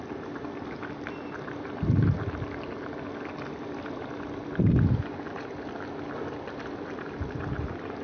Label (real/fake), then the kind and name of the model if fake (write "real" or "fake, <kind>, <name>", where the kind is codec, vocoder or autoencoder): real